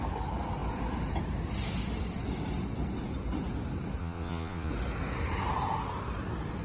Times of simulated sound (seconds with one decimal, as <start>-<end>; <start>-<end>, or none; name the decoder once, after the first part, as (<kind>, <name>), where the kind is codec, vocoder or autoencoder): 4.0-4.7 (vocoder, Vocos)